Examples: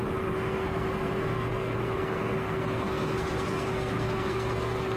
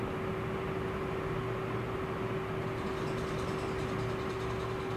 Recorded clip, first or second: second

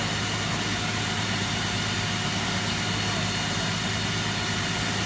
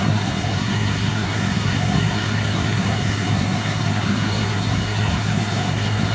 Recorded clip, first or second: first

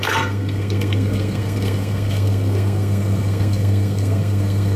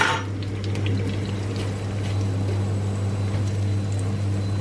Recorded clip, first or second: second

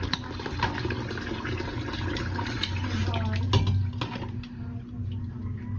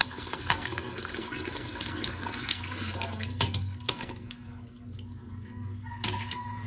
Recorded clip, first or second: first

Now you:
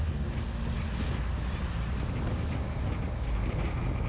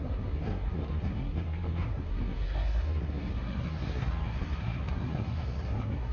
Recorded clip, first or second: first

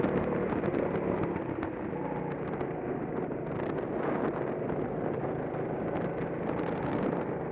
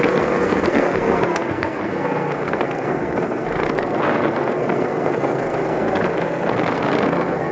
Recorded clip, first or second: first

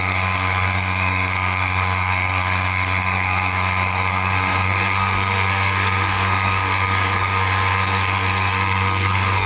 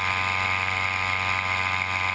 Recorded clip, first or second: second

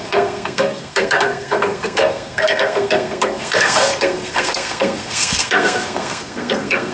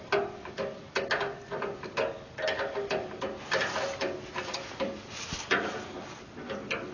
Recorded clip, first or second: second